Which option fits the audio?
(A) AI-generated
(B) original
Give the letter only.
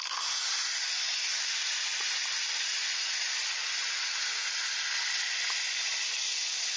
B